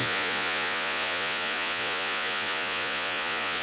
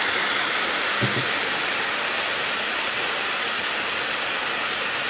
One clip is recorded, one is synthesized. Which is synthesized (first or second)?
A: first